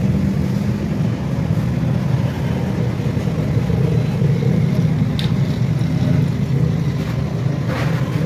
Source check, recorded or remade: recorded